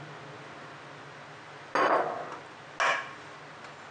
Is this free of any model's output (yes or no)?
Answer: yes